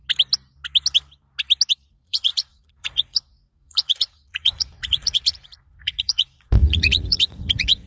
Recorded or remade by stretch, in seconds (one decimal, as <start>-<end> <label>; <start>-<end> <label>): 0.0-1.9 recorded; 1.9-7.9 remade